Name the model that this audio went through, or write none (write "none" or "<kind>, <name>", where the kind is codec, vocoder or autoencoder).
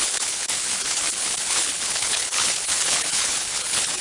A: codec, HILCodec